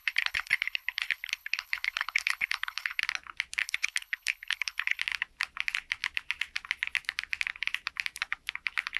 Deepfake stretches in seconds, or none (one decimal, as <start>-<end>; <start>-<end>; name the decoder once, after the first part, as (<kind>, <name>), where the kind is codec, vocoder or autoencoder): 0.0-3.0 (codec, HILCodec); 3.6-5.0